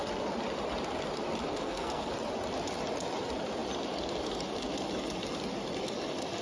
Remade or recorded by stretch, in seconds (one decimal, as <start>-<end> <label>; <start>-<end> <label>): 0.0-1.5 recorded; 1.5-2.1 remade; 2.1-6.4 recorded